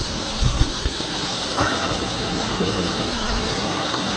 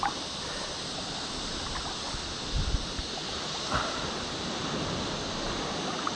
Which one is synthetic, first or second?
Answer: first